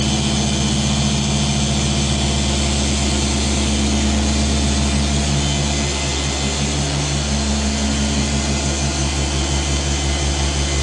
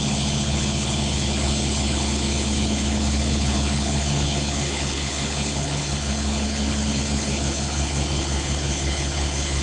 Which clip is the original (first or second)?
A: first